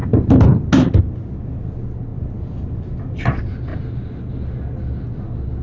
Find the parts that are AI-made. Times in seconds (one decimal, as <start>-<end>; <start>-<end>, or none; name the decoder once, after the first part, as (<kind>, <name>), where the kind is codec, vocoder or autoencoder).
none

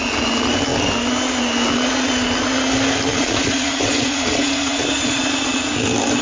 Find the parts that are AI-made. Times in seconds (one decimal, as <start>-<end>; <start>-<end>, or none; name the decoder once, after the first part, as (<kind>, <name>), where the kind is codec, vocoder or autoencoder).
3.1-5.7 (vocoder, Vocos)

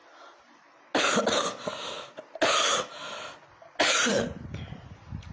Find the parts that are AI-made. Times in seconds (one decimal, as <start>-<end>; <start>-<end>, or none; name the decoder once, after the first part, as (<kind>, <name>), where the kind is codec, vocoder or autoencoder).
none

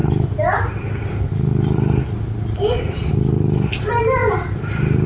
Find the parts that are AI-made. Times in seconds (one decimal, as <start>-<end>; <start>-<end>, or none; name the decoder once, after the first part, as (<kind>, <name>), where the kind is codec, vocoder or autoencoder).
none